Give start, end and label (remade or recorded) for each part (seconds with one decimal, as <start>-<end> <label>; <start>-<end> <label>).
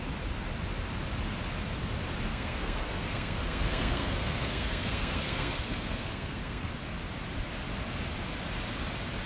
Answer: 0.0-2.3 recorded; 2.3-6.7 remade; 6.7-9.3 recorded